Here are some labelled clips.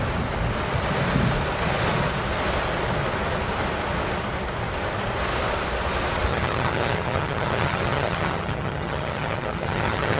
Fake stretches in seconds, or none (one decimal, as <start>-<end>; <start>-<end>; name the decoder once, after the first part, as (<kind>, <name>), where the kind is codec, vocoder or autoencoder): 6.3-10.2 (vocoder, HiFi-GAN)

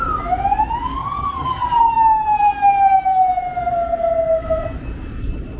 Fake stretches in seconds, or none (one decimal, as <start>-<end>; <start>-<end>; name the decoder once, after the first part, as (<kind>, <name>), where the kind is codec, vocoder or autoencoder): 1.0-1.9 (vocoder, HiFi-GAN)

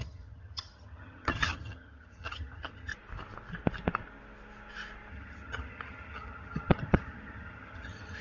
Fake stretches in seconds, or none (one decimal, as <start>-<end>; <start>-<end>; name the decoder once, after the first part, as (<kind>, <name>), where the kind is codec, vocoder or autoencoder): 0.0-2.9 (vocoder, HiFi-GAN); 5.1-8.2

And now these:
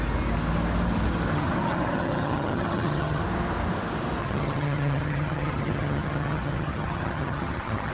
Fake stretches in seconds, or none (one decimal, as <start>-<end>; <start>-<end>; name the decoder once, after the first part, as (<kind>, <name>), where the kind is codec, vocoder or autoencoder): 1.3-3.2 (vocoder, HiFi-GAN); 4.2-7.9

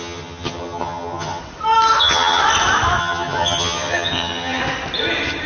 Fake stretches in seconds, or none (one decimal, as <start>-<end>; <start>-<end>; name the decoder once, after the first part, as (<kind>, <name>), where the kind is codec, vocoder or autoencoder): 0.0-1.4 (vocoder, HiFi-GAN); 2.0-2.4; 3.0-4.6

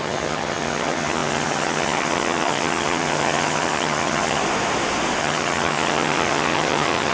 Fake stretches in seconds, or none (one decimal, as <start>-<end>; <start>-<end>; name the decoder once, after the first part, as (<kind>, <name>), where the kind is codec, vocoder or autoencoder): 0.0-4.4 (vocoder, HiFi-GAN); 5.2-7.1

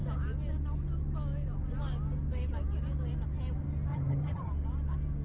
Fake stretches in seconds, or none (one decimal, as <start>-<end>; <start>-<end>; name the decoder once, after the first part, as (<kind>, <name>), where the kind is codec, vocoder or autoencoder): 3.9-4.5 (vocoder, HiFi-GAN)